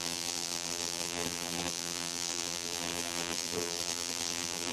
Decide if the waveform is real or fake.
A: fake